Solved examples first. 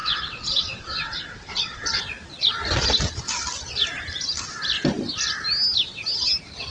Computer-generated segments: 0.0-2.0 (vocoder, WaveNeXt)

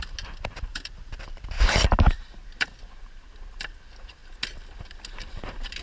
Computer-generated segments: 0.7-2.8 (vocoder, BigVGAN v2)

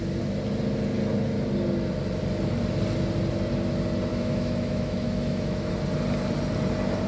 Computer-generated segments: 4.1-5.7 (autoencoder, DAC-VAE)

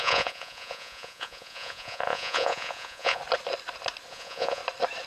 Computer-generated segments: 0.0-3.2 (vocoder, Vocos); 4.1-4.6